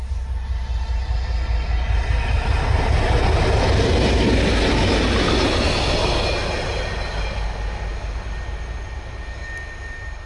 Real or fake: real